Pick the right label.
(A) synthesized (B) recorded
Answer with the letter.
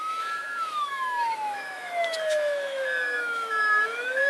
A